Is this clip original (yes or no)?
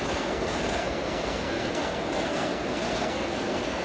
no